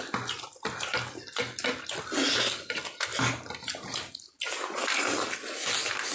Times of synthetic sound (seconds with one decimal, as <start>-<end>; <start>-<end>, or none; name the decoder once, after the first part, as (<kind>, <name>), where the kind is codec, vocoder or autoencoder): none